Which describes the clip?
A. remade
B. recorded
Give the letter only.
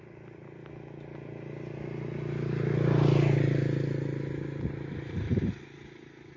B